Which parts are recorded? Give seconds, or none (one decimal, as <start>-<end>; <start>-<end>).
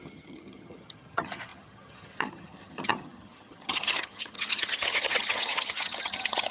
none